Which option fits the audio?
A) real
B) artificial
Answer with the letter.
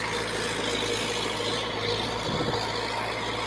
A